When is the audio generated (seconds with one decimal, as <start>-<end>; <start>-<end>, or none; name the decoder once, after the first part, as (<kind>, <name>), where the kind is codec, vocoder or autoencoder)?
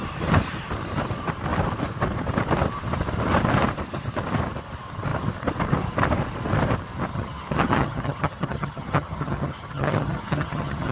7.1-10.9 (vocoder, HiFi-GAN)